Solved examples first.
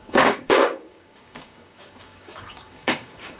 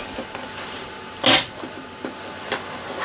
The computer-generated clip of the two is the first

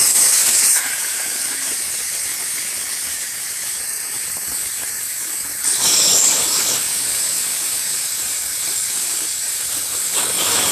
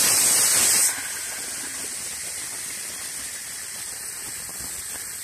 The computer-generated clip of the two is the first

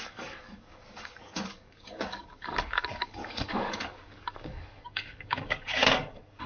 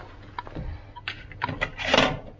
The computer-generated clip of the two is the first